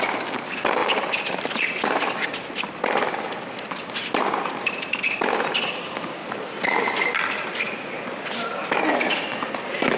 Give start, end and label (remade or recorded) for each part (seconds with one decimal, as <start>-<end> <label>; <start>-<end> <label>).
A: 0.0-0.8 recorded; 0.8-2.1 remade; 2.1-6.2 recorded; 6.2-7.1 remade; 7.1-10.0 recorded